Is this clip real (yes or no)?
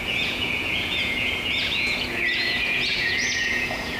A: no